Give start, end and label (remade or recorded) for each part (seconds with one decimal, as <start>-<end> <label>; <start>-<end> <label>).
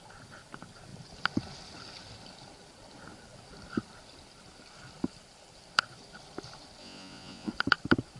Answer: 0.0-6.8 recorded; 6.8-7.5 remade; 7.5-8.2 recorded